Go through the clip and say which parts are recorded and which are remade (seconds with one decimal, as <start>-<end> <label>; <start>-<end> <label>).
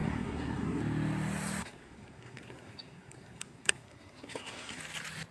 0.0-0.8 remade; 0.8-1.6 recorded; 1.6-4.8 remade; 4.8-5.3 recorded